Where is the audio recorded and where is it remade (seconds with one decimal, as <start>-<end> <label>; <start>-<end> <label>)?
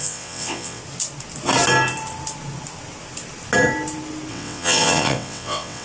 0.0-0.8 remade; 0.8-4.3 recorded; 4.3-5.8 remade